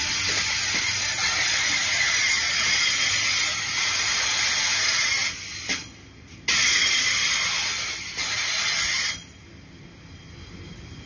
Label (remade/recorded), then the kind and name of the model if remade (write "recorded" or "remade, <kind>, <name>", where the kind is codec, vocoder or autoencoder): recorded